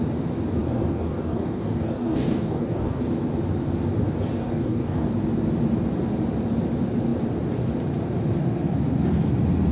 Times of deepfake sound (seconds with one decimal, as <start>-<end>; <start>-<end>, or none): 0.6-3.0; 4.4-5.1